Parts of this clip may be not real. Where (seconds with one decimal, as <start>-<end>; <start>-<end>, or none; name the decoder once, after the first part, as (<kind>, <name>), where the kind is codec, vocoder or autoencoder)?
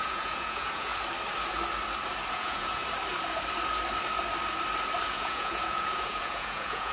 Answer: 0.0-0.9 (vocoder, Vocos); 2.3-2.8; 5.1-6.9